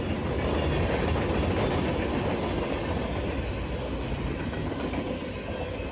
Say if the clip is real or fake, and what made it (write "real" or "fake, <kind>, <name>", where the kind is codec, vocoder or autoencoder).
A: real